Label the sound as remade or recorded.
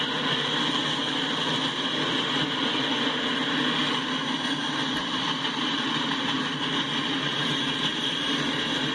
recorded